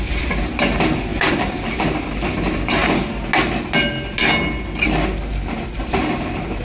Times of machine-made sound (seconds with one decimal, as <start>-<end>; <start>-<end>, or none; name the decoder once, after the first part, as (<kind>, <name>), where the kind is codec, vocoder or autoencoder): 0.0-2.8 (vocoder, BigVGAN v2); 5.7-6.6